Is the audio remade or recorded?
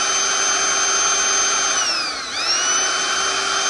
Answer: recorded